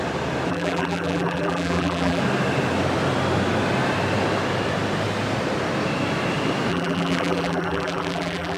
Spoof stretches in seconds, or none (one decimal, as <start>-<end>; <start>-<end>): 0.5-2.2; 6.7-8.6